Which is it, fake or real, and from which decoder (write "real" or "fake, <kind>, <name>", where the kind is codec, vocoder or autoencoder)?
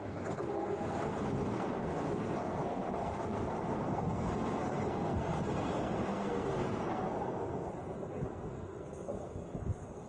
fake, codec, SNAC